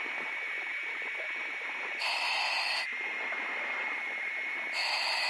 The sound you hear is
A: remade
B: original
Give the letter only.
B